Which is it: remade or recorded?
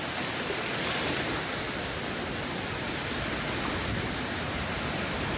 recorded